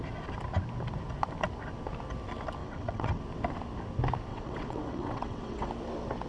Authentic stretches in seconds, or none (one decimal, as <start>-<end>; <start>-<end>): 0.0-2.6; 3.2-4.3; 5.7-6.3